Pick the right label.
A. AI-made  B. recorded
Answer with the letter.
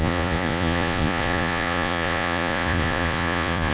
A